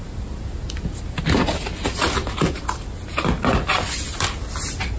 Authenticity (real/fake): real